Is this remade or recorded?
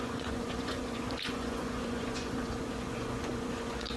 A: remade